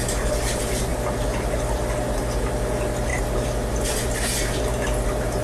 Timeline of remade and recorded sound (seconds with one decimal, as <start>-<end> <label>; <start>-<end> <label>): 0.0-5.4 recorded